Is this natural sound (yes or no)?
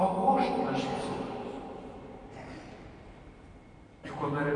yes